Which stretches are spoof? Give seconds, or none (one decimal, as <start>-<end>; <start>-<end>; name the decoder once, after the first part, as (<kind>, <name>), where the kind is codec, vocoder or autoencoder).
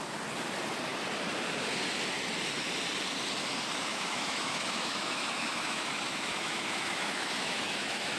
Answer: 3.9-8.2 (autoencoder, DAC-VAE)